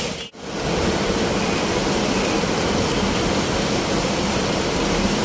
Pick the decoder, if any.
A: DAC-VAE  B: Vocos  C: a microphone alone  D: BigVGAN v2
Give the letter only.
C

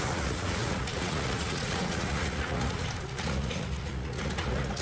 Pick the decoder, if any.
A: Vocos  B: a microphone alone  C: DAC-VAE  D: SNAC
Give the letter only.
A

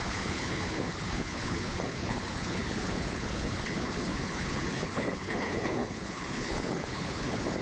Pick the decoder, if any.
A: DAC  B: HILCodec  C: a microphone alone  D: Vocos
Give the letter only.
B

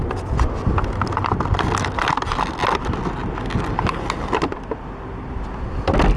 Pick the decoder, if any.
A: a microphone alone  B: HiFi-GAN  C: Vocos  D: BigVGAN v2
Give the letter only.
A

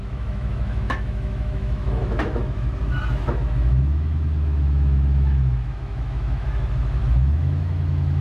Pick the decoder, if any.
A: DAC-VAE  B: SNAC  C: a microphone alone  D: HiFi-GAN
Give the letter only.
A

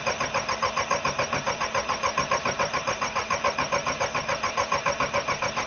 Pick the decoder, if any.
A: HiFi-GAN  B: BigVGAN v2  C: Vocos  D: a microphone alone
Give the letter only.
B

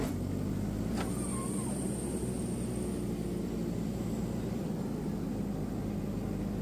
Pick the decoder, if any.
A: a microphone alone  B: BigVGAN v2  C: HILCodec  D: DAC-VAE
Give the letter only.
A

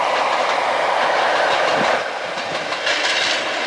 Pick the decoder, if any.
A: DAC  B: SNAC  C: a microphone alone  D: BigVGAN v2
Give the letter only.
C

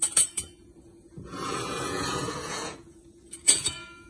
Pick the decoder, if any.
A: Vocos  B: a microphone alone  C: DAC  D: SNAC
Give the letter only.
A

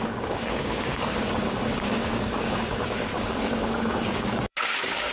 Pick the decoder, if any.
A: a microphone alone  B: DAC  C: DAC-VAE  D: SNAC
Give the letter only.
B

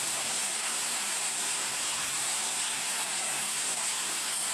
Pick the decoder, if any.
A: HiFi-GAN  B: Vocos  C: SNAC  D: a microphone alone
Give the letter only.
C